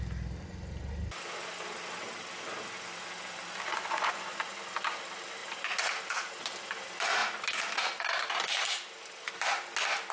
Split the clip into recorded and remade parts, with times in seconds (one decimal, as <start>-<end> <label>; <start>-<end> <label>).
0.0-3.7 recorded; 3.7-4.4 remade; 4.4-10.1 recorded